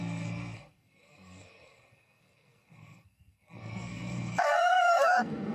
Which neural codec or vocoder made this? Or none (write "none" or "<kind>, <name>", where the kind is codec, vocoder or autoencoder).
codec, SNAC